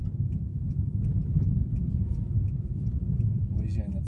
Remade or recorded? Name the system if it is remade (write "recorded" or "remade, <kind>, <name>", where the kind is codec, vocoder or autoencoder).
recorded